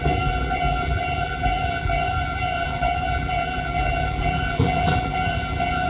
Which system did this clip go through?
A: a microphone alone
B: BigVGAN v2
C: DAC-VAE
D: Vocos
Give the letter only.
B